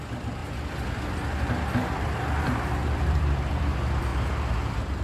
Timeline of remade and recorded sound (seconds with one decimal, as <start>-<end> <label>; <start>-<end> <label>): 0.0-0.4 remade; 0.4-2.0 recorded; 2.0-4.1 remade; 4.1-5.0 recorded